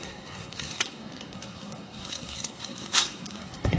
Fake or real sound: fake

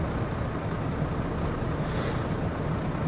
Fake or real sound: real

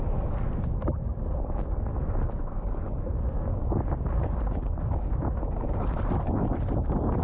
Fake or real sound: real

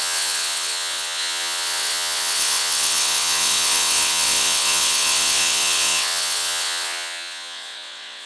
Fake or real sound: fake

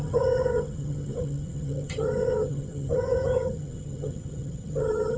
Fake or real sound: fake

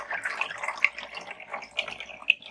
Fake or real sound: real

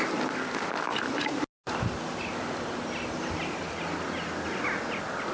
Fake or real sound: real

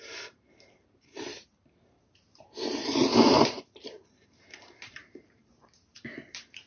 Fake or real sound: fake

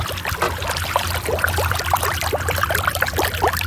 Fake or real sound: real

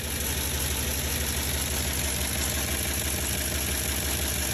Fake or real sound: real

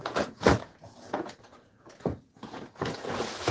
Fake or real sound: fake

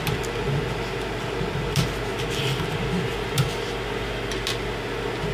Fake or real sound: real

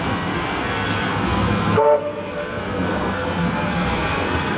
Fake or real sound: fake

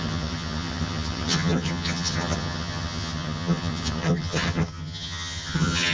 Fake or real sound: fake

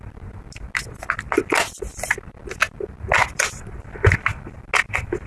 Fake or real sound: real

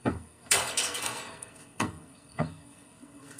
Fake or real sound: fake